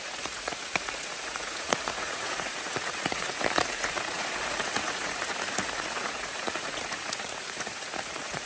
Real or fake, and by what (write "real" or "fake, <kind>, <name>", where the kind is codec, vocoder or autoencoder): fake, vocoder, Vocos